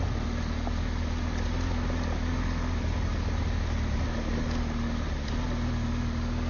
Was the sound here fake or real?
real